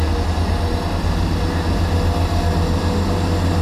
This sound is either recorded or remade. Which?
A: recorded